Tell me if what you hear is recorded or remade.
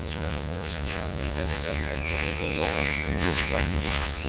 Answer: remade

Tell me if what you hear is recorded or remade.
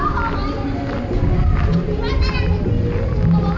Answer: recorded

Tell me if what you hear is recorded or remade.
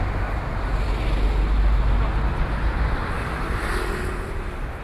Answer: recorded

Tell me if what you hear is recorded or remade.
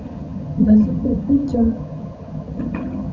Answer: remade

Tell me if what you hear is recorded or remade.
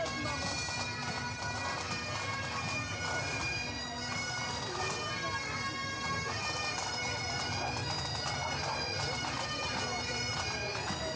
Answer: recorded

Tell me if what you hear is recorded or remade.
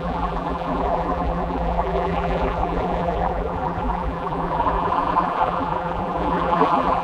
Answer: remade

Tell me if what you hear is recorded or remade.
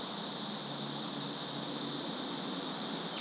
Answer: recorded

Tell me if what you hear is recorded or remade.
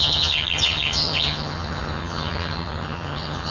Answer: remade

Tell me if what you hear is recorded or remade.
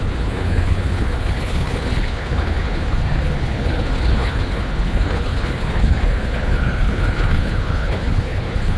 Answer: remade